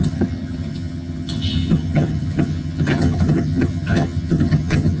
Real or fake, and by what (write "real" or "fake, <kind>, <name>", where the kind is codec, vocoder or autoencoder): fake, vocoder, HiFi-GAN